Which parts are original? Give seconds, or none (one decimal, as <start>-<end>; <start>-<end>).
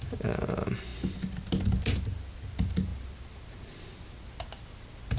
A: 0.0-5.2